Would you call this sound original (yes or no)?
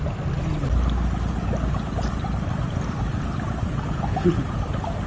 yes